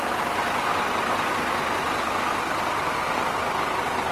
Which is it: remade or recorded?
recorded